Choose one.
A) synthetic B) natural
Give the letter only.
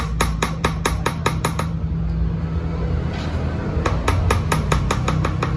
B